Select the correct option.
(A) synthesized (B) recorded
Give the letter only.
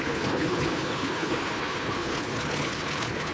A